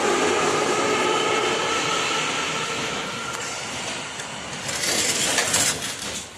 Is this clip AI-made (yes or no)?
no